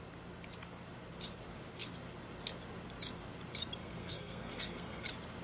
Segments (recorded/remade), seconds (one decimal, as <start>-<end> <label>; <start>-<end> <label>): 0.0-3.8 recorded; 3.8-5.0 remade; 5.0-5.4 recorded